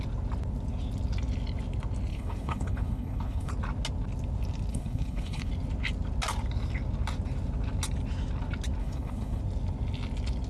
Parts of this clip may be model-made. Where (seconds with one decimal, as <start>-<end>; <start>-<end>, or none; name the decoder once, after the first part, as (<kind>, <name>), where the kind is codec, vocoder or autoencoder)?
2.1-3.5 (codec, HILCodec); 4.7-5.5; 8.8-9.4